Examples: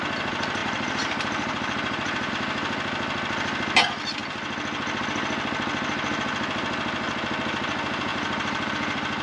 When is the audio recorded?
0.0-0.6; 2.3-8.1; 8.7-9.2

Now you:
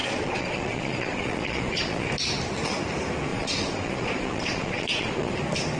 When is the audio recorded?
2.1-3.3; 5.3-5.8

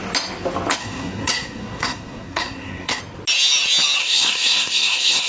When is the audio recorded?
0.0-0.8; 3.0-4.0

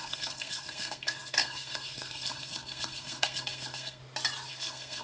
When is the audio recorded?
4.0-4.5

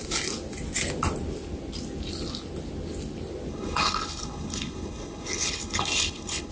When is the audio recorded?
0.0-3.5

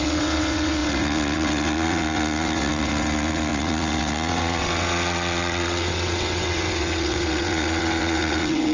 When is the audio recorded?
none

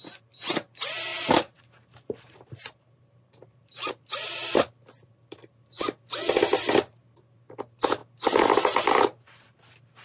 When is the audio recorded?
0.0-1.1; 3.9-10.0

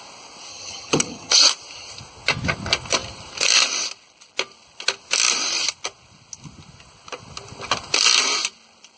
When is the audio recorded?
0.0-0.5; 1.3-9.0